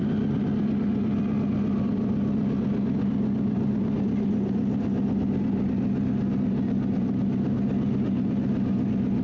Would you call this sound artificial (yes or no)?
no